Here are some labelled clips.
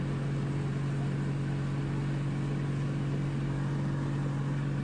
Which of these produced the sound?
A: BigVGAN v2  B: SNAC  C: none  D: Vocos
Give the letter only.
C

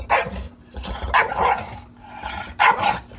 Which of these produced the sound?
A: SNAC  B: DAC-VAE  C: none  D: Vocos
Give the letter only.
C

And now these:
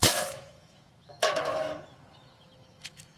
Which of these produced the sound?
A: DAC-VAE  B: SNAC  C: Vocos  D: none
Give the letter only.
A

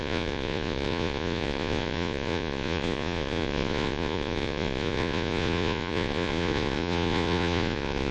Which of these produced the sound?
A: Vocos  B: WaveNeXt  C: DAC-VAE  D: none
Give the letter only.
A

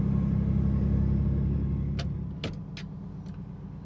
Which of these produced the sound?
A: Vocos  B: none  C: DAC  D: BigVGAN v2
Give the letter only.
B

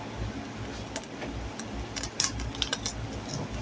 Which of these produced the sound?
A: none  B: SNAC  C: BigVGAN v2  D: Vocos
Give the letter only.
A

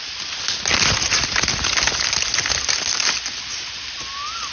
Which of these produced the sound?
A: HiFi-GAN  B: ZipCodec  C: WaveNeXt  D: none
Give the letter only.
D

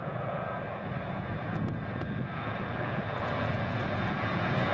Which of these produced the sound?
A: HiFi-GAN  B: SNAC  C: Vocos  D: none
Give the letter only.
C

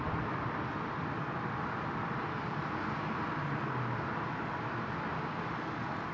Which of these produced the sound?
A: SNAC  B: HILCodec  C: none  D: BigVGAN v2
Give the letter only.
C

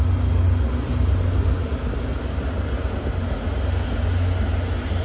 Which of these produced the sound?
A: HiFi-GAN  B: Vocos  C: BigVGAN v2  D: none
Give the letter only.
D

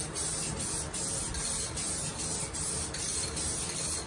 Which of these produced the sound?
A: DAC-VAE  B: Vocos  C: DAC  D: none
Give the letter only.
D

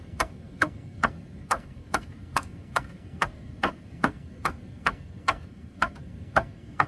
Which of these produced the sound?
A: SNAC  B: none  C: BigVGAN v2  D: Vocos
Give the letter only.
A